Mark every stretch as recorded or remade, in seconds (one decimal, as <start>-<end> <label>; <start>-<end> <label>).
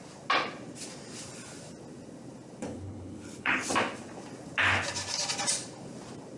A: 0.0-2.6 recorded; 2.6-3.7 remade; 3.7-6.4 recorded